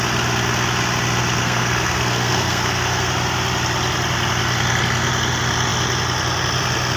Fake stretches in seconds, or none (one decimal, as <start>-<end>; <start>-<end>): 1.4-3.1

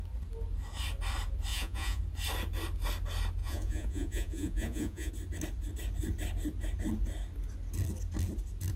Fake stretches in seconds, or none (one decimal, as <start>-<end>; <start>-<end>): 1.5-2.0; 3.4-5.1

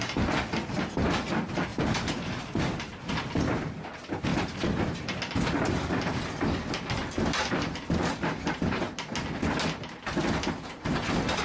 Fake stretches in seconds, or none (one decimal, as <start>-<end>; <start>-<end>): 1.7-3.1; 4.3-5.0; 7.0-8.8; 10.2-11.4